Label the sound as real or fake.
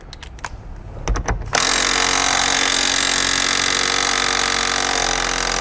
real